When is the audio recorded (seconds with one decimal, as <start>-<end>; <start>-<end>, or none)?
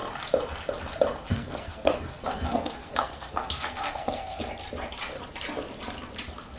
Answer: 0.0-1.3; 4.4-6.6